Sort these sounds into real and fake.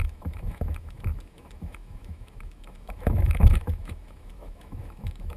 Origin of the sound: fake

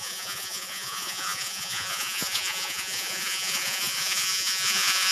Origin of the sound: fake